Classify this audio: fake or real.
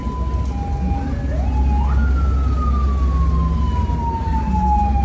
real